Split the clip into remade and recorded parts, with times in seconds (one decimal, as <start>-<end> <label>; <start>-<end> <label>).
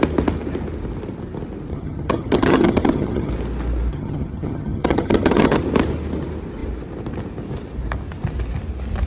0.0-1.7 recorded; 1.7-3.3 remade; 3.3-3.9 recorded; 3.9-5.6 remade; 5.6-9.1 recorded